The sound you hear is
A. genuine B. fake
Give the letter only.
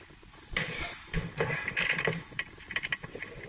B